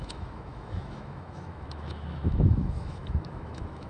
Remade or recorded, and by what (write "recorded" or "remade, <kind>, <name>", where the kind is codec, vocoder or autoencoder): remade, autoencoder, DAC-VAE